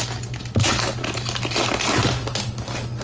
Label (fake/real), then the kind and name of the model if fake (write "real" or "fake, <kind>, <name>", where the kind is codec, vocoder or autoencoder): real